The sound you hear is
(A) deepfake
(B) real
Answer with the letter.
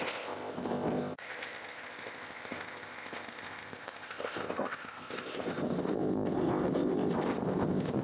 A